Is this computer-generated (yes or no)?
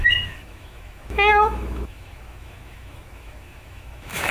yes